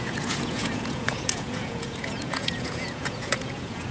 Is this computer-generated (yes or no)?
yes